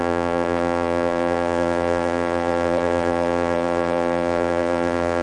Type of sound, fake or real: fake